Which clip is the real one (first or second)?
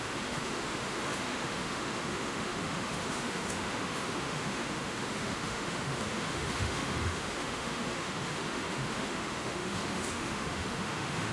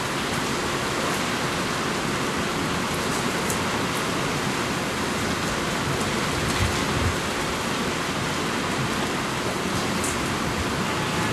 second